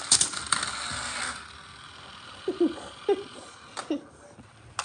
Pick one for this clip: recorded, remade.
recorded